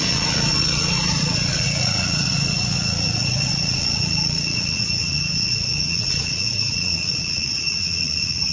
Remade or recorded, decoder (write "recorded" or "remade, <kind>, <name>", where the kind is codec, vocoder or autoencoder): remade, vocoder, Vocos